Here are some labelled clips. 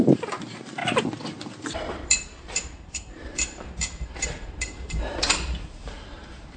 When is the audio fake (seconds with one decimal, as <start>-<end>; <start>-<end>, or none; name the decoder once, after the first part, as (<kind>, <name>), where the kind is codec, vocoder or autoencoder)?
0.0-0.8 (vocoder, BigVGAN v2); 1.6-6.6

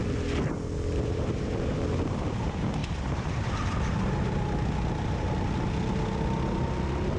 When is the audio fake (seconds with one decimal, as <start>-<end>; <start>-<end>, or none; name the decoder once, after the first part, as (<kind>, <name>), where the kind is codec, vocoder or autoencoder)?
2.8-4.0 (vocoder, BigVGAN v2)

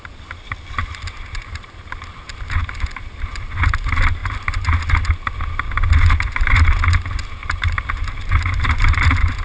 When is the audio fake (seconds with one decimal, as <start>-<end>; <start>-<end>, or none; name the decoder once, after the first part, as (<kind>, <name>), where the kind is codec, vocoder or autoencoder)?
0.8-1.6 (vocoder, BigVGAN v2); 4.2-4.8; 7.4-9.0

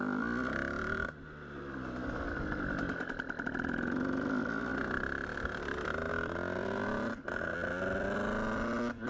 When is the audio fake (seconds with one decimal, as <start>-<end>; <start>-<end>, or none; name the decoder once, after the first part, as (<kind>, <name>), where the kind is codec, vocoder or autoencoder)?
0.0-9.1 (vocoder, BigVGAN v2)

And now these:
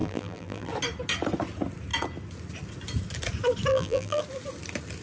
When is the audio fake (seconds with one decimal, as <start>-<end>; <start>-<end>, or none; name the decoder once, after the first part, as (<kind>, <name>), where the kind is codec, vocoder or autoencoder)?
0.0-0.7 (vocoder, BigVGAN v2); 3.7-4.2

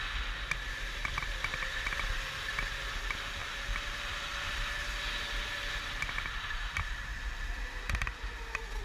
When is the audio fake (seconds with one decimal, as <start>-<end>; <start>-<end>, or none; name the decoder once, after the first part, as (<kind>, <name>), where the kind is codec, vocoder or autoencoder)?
1.5-2.1 (vocoder, BigVGAN v2); 3.4-8.4

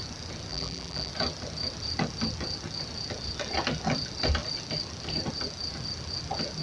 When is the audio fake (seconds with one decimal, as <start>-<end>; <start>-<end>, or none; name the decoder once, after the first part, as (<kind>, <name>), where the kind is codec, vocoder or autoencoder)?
0.5-1.1 (vocoder, BigVGAN v2)

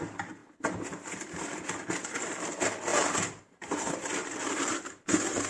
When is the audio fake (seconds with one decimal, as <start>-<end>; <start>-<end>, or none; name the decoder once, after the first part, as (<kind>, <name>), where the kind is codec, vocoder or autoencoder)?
2.9-5.5 (vocoder, BigVGAN v2)